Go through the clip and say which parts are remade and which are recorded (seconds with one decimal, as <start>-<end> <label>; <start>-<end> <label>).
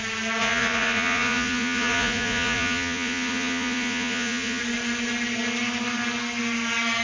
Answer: 0.0-0.4 recorded; 0.4-4.6 remade; 4.6-7.0 recorded